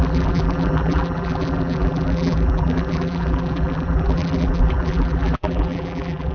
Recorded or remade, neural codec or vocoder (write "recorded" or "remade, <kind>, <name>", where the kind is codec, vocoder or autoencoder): remade, vocoder, BigVGAN v2